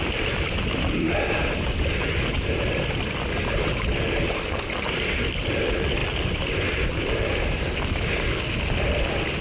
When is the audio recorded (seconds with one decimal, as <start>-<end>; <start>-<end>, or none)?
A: 0.0-9.4